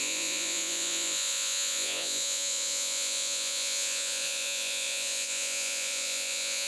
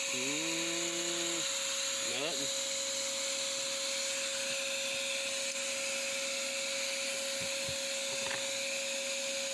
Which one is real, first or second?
second